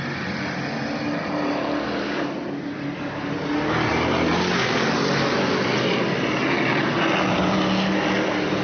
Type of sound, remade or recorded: recorded